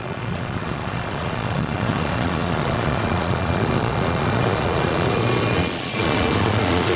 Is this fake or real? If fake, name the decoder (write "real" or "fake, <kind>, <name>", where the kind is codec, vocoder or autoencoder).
fake, vocoder, Vocos